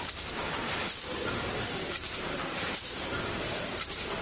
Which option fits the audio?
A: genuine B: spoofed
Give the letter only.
B